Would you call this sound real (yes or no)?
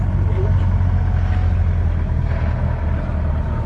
yes